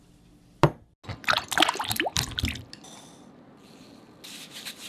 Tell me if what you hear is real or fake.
real